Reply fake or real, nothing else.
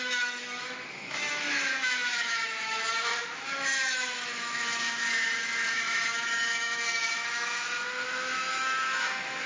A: fake